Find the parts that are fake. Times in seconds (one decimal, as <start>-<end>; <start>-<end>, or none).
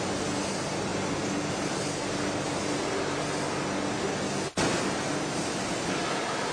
none